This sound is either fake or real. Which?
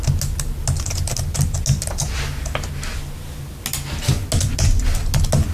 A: real